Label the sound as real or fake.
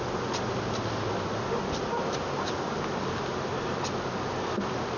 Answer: real